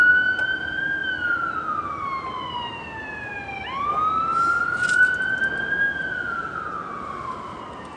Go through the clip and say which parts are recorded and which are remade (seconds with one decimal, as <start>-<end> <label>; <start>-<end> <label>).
0.0-8.0 recorded